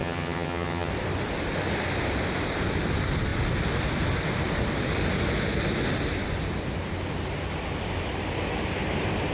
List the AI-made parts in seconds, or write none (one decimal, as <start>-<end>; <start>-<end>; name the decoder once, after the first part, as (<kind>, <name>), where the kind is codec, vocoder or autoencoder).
0.0-0.9 (vocoder, HiFi-GAN)